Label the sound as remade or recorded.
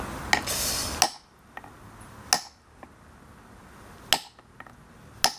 recorded